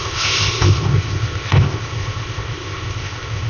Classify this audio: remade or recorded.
remade